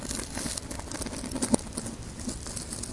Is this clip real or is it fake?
real